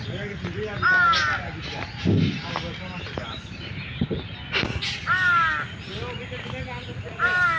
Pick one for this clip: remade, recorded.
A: recorded